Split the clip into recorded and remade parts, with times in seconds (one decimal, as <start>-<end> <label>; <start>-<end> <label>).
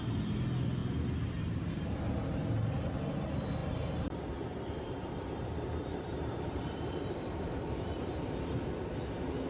0.0-3.6 recorded; 3.6-8.4 remade; 8.4-9.5 recorded